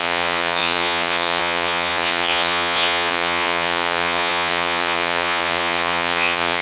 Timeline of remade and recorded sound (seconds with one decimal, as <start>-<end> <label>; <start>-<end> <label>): 0.0-6.6 remade